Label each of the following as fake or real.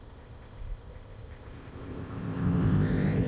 fake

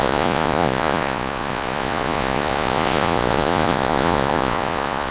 fake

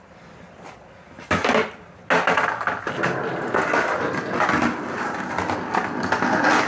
real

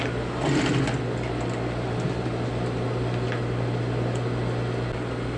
real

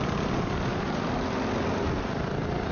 real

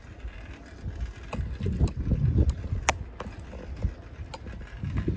real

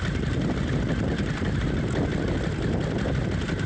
real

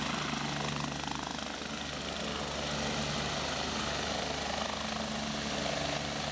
real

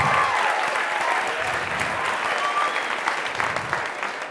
real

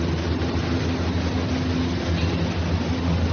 real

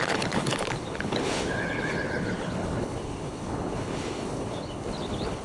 fake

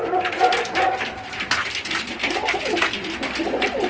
fake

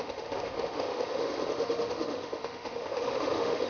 fake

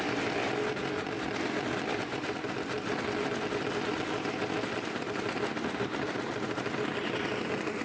real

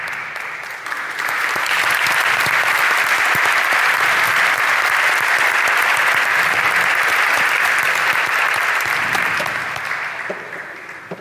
fake